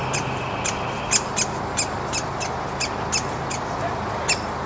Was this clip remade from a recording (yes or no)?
no